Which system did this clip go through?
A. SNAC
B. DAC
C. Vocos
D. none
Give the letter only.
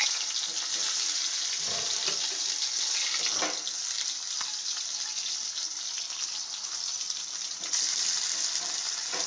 D